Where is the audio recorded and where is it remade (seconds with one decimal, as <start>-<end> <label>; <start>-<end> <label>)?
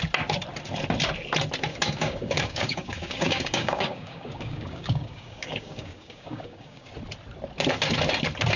0.0-1.7 recorded; 1.7-6.9 remade; 6.9-8.6 recorded